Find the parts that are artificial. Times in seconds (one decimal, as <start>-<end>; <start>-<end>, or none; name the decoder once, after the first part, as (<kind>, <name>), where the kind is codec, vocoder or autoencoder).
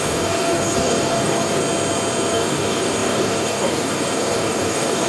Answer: 0.0-1.6 (codec, DAC); 2.3-5.1